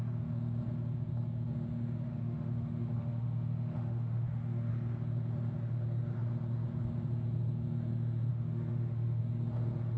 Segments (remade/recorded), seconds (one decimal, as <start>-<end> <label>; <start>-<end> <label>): 0.0-2.1 recorded; 2.1-4.7 remade; 4.7-8.3 recorded; 8.3-9.2 remade; 9.2-10.0 recorded